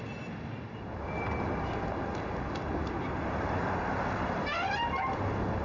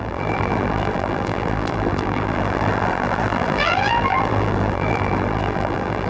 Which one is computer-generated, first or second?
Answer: second